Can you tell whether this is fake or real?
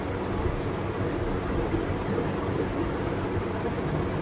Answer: real